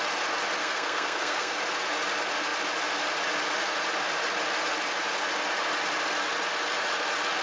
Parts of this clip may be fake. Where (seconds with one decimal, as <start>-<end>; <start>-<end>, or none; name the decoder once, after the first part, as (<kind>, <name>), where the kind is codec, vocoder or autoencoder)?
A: 0.6-1.6 (codec, SNAC)